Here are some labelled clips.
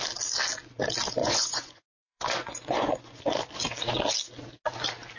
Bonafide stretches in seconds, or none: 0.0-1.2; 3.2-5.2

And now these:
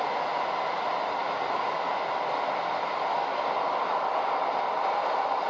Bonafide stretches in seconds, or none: 0.0-5.5

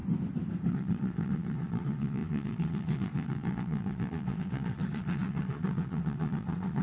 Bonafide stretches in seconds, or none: 0.0-0.7

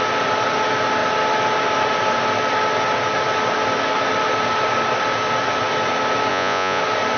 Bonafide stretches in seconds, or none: 0.0-6.3; 6.8-7.2

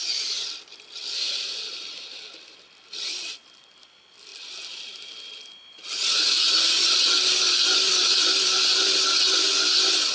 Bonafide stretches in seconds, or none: 0.0-10.1

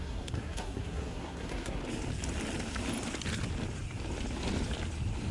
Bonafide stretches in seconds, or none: 1.8-5.3

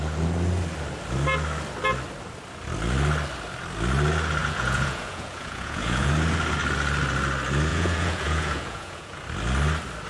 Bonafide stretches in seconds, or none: 0.0-4.4; 6.1-7.7; 9.2-10.1

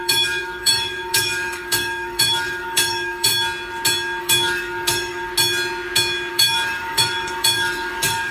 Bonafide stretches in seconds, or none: 3.3-4.2; 5.3-6.3